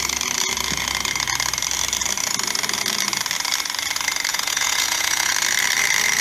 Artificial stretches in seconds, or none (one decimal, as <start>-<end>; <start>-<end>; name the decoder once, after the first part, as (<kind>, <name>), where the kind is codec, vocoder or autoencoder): 4.3-5.3 (vocoder, Vocos)